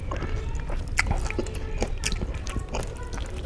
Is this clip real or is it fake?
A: real